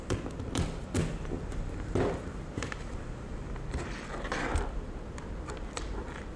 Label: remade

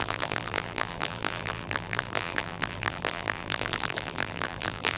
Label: remade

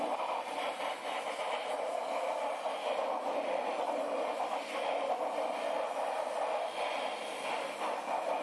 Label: recorded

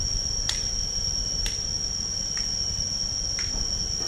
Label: recorded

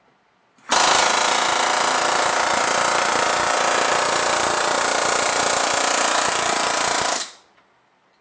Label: recorded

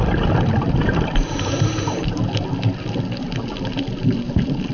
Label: recorded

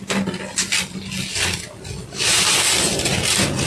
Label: recorded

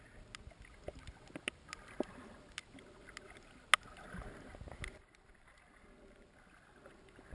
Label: recorded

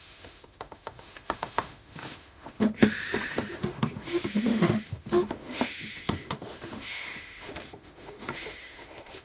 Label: remade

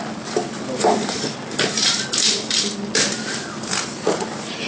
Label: recorded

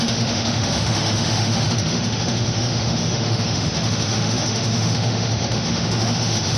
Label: remade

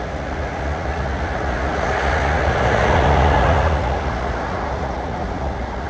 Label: remade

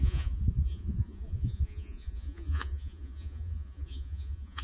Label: remade